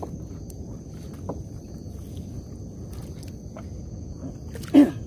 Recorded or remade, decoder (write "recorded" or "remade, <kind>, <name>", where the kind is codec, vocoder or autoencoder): recorded